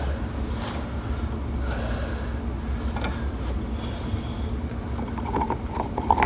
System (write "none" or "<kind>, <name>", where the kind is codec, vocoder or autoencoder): none